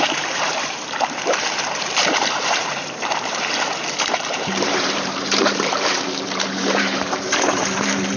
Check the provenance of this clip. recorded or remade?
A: remade